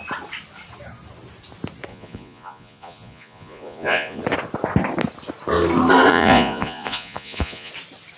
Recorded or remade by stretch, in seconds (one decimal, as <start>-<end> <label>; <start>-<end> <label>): 0.0-1.9 recorded; 1.9-4.2 remade; 4.2-6.1 recorded; 6.1-7.7 remade; 7.7-8.2 recorded